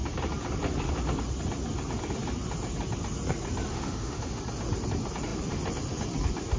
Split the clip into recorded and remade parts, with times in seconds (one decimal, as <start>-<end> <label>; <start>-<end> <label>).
0.0-3.7 recorded; 3.7-4.4 remade; 4.4-6.6 recorded